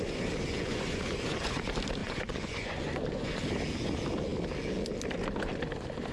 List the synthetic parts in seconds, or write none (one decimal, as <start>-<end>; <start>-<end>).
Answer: 0.5-1.6; 2.0-3.4